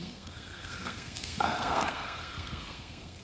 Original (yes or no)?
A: no